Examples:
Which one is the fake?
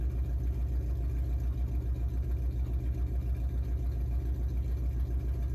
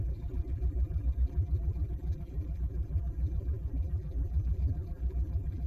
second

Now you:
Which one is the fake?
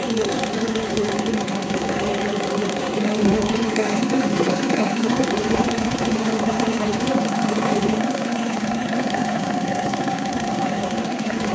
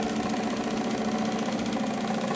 first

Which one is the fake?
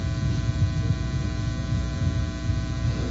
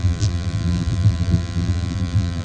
second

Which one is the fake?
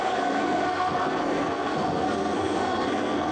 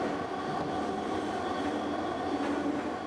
first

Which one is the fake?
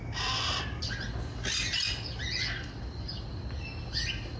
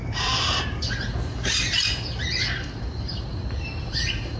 second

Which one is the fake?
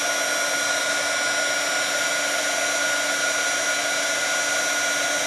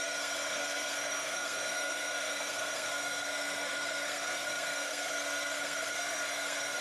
second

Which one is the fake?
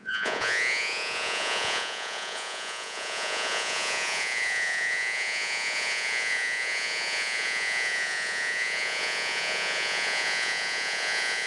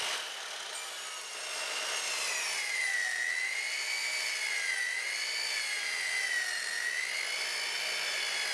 first